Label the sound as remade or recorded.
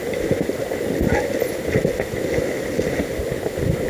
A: recorded